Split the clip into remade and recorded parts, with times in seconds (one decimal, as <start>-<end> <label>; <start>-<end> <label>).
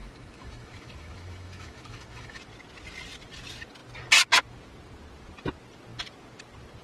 0.0-2.4 remade; 2.4-6.8 recorded